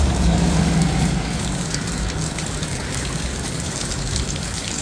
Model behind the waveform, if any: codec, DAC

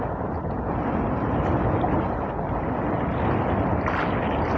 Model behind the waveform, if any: none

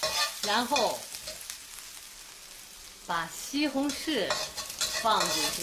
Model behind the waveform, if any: none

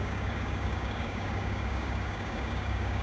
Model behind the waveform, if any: codec, DAC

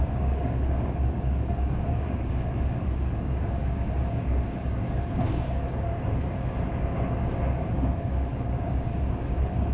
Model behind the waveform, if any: codec, DAC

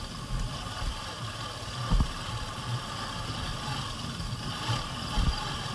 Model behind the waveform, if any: none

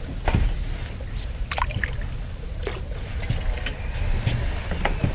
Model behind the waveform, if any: none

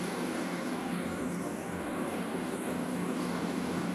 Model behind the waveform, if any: codec, DAC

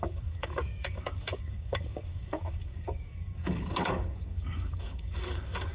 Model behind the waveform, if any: codec, DAC